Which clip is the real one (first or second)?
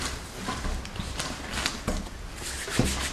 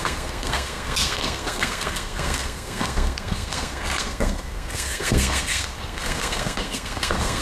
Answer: first